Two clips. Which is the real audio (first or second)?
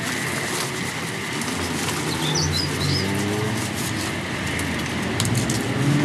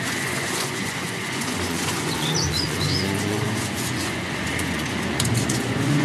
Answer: first